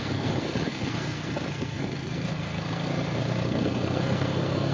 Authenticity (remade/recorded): remade